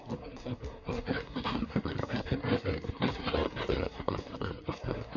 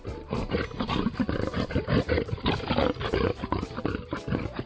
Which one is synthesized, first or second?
first